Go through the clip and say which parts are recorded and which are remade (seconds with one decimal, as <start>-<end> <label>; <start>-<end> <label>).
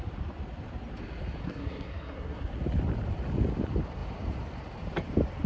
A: 0.0-1.4 recorded; 1.4-2.6 remade; 2.6-5.5 recorded